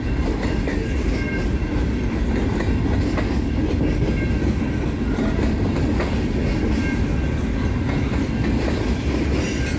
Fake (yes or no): no